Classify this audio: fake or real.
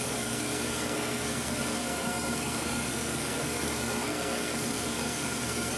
fake